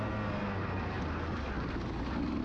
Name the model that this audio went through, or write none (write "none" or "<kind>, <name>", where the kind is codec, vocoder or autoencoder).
none